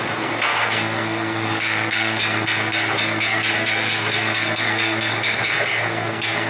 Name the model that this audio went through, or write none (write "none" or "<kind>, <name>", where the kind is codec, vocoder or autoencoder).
codec, SNAC